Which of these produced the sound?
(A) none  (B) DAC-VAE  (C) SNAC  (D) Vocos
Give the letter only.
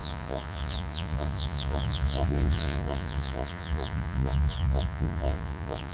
D